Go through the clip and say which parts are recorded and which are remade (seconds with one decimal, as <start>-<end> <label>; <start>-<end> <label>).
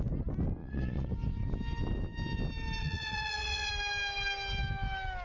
0.0-0.6 recorded; 0.6-1.1 remade; 1.1-2.8 recorded; 2.8-3.7 remade; 3.7-5.2 recorded